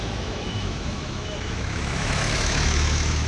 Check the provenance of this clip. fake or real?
fake